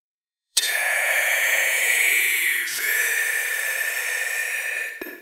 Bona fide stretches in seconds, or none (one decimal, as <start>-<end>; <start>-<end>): 3.1-5.2